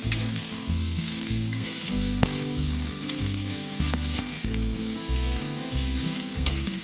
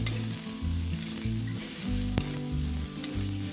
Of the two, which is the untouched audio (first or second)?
second